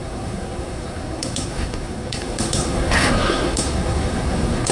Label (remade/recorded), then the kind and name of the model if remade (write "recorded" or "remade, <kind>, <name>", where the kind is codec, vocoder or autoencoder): remade, codec, SNAC